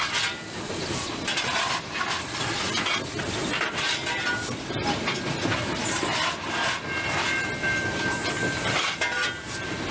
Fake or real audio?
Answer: real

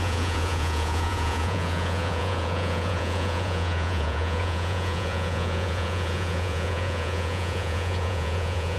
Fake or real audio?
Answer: fake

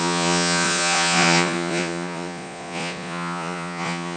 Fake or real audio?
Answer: fake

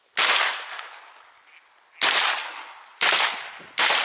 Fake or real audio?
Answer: real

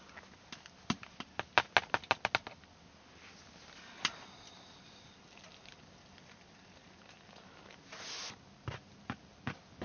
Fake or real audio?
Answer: real